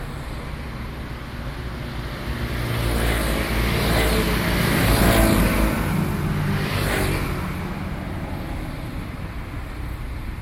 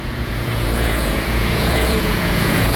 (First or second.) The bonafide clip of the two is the first